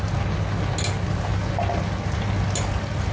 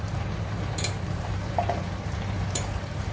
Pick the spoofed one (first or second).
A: second